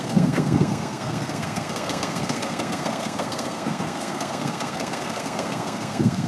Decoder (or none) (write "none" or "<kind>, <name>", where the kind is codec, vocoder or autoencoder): codec, SNAC